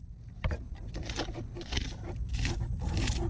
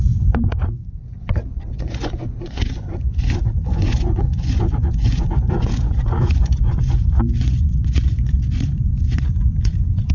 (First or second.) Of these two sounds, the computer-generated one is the second